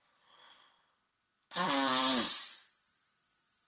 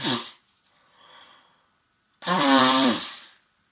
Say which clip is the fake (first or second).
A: second